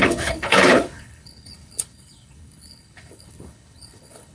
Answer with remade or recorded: remade